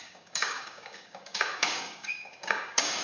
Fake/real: fake